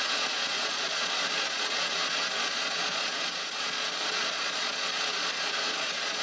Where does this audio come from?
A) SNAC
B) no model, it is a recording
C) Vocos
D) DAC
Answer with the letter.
C